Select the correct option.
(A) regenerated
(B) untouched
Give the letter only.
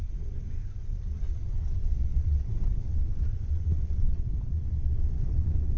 A